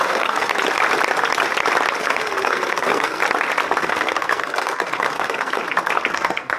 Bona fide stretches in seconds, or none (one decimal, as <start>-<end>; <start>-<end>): 0.5-2.0; 3.2-3.8; 5.6-6.1